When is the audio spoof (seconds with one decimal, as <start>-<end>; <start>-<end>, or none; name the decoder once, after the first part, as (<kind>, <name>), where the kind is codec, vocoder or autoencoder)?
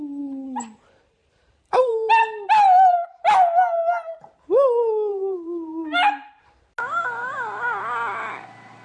1.2-2.1 (vocoder, BigVGAN v2); 5.1-6.5